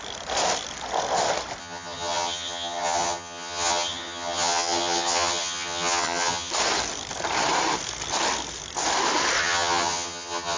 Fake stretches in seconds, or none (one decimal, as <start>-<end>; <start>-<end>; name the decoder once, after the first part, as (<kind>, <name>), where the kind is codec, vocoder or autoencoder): 1.6-6.5 (vocoder, HiFi-GAN); 9.4-10.6